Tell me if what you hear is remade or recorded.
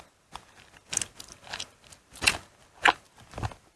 recorded